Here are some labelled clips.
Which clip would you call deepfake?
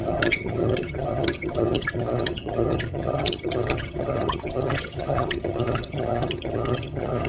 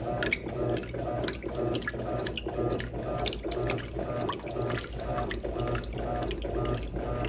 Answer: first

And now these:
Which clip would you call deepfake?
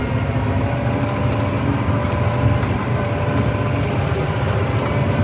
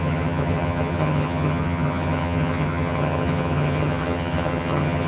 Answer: second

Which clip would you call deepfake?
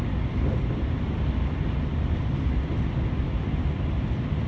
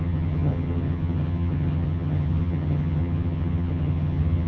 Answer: second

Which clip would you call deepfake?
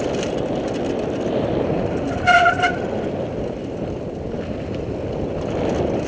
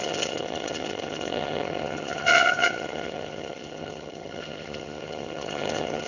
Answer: second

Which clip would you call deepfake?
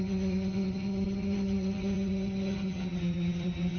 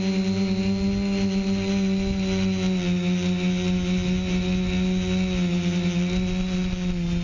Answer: first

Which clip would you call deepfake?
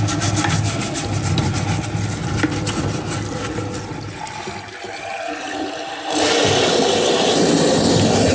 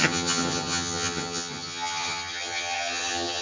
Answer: second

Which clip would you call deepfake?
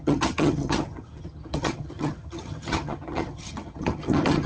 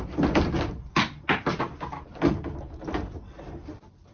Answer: first